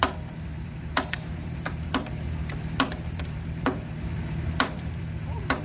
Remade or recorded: remade